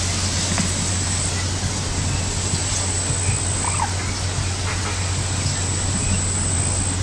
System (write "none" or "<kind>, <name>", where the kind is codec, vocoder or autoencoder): none